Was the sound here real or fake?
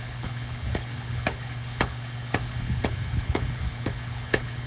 fake